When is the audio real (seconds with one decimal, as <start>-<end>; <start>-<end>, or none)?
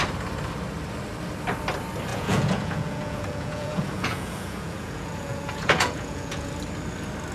0.0-2.1; 6.5-7.3